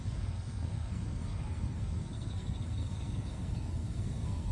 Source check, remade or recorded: remade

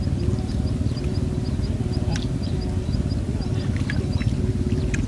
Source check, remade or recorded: recorded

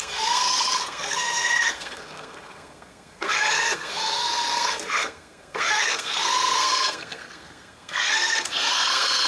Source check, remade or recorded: remade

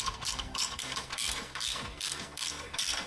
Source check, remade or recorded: remade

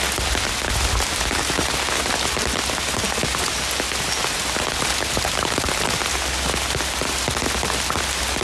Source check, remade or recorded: recorded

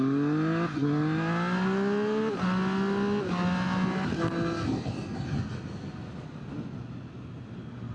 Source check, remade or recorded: recorded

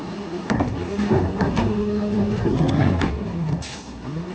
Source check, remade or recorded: remade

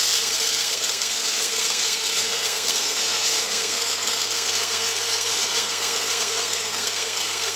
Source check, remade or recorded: remade